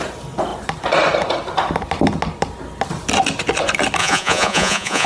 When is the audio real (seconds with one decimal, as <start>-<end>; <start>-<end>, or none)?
0.0-4.0